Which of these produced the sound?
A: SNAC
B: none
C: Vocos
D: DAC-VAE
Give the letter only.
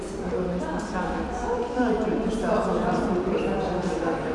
B